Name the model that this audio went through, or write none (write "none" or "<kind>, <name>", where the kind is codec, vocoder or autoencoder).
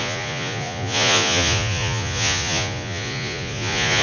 vocoder, Vocos